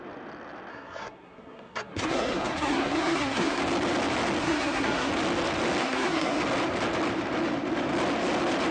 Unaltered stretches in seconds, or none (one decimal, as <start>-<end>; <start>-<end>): 0.0-0.7; 3.6-4.4; 5.1-5.8; 6.4-8.7